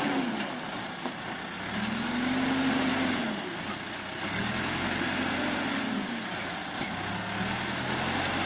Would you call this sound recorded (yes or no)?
yes